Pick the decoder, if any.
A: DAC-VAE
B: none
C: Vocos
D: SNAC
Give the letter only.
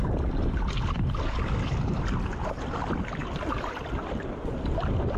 B